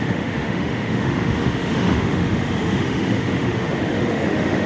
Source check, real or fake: fake